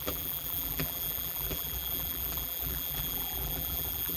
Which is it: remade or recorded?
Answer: remade